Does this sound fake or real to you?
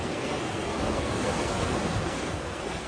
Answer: fake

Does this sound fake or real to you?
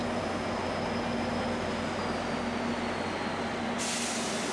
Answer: real